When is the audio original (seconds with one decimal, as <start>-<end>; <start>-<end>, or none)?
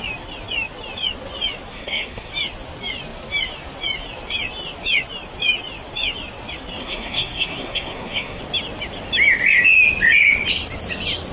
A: 0.0-1.7; 2.3-6.8; 8.4-11.3